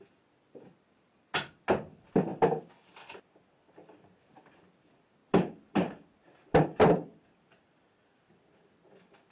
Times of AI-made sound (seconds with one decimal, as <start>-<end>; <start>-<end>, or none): none